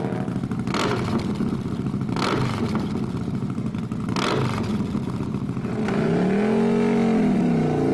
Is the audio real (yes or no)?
yes